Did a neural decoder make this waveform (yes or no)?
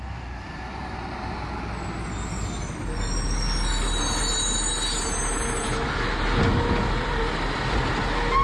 no